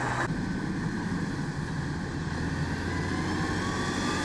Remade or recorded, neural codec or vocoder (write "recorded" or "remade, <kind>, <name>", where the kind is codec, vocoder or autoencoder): recorded